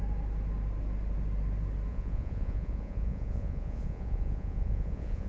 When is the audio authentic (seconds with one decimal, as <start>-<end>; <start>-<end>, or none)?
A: 0.0-1.9